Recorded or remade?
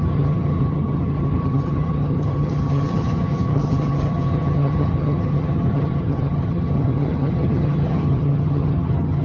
remade